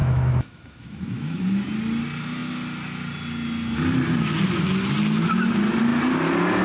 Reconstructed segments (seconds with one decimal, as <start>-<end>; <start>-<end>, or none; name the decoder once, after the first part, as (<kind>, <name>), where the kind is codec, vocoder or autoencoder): 0.0-1.4 (autoencoder, DAC-VAE)